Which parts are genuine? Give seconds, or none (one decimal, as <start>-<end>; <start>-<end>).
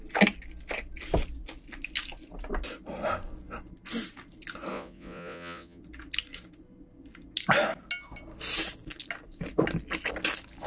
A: 0.0-4.7; 5.8-10.7